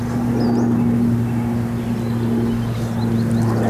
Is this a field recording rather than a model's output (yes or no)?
yes